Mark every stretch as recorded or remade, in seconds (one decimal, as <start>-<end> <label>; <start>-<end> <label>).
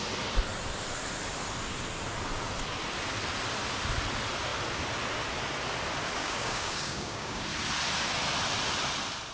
0.0-6.2 recorded; 6.2-7.4 remade; 7.4-9.3 recorded